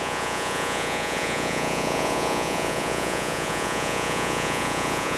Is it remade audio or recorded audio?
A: remade